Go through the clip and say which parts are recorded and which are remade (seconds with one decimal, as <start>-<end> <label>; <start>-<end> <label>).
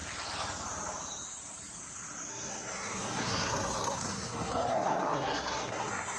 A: 0.0-2.3 recorded; 2.3-6.2 remade